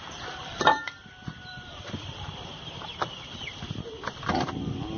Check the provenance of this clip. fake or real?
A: fake